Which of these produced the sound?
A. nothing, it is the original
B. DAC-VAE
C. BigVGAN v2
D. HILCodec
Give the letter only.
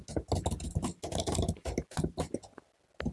A